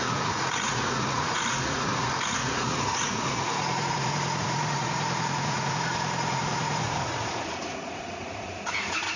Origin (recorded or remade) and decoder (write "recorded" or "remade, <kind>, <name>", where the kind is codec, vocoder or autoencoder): remade, vocoder, Vocos